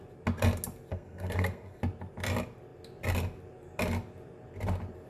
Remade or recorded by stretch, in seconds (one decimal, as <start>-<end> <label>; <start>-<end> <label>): 0.0-0.9 recorded; 0.9-1.8 remade; 1.8-5.1 recorded